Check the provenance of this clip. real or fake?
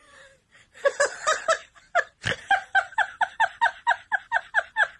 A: fake